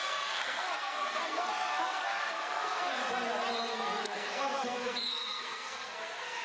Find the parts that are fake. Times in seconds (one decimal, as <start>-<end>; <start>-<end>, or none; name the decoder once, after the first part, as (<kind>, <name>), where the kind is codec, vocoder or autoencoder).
0.0-3.0 (codec, SNAC); 3.7-6.4

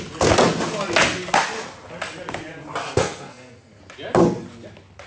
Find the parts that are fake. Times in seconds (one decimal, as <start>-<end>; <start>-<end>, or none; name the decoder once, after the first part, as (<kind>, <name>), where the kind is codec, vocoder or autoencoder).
2.8-3.8 (codec, SNAC)